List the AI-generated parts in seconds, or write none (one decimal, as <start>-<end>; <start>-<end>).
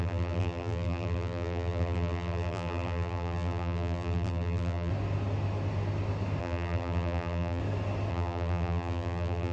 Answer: 0.0-4.9; 6.4-7.6; 8.1-9.5